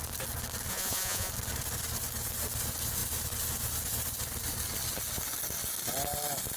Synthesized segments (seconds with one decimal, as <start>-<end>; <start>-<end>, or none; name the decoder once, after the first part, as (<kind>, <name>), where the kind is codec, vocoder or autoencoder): 0.7-1.3 (vocoder, Vocos)